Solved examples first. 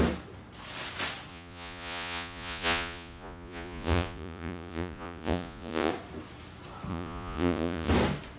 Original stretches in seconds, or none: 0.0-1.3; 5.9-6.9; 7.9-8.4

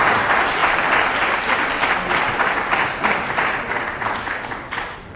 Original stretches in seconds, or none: 0.0-5.2

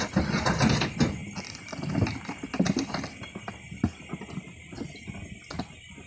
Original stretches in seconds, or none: 0.0-6.1